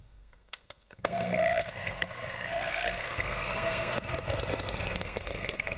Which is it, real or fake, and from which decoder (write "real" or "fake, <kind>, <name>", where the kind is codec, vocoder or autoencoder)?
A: fake, codec, SNAC